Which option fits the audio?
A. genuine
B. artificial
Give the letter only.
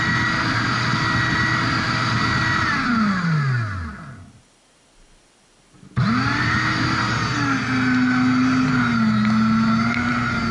A